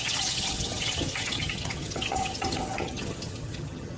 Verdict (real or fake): fake